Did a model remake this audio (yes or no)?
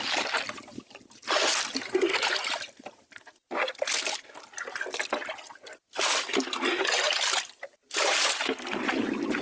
no